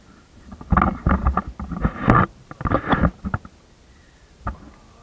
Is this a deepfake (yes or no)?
no